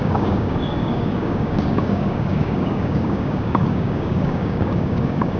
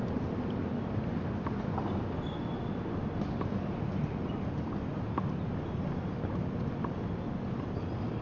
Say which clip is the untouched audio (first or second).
second